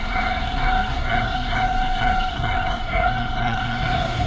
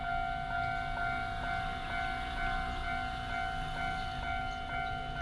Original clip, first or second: second